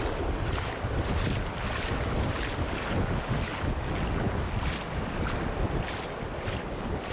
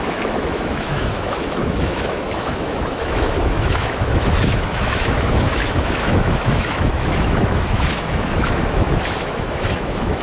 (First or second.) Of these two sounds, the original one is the first